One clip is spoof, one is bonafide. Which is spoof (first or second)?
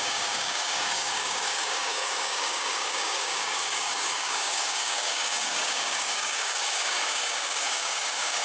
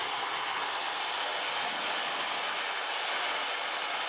first